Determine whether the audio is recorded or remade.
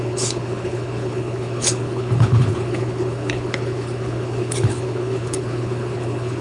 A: remade